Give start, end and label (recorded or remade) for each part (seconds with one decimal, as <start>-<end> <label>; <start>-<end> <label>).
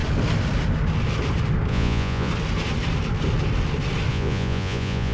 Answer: 0.0-1.7 recorded; 1.7-2.3 remade; 2.3-4.1 recorded; 4.1-5.1 remade